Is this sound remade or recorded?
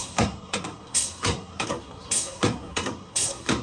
remade